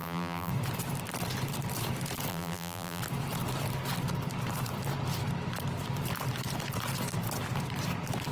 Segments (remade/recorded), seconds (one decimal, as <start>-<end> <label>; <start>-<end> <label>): 0.0-0.5 remade; 0.5-2.3 recorded; 2.3-3.0 remade; 3.0-8.3 recorded